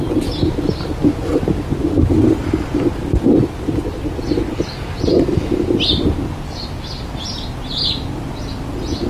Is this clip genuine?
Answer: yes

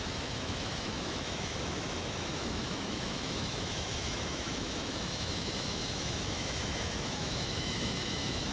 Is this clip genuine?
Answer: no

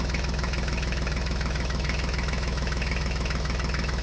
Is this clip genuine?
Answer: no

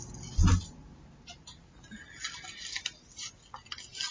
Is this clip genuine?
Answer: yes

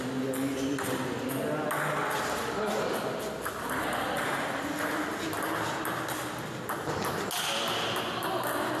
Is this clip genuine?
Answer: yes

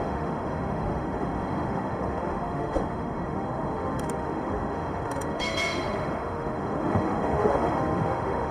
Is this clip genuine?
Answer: no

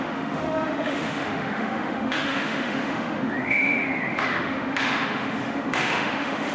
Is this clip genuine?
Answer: no